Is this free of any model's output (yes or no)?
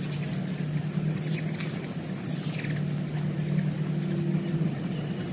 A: yes